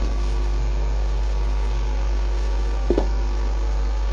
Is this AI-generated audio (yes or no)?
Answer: yes